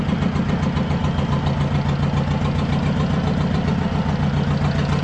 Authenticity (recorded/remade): recorded